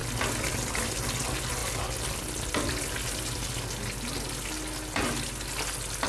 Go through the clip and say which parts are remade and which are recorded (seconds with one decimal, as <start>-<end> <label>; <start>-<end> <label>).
0.0-6.1 recorded